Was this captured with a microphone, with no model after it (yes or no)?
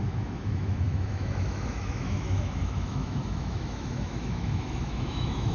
no